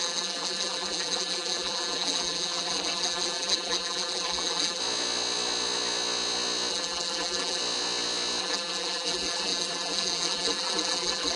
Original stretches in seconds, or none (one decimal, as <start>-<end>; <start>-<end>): 4.8-6.7; 7.6-8.4